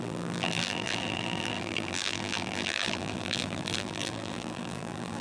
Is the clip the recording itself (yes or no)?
no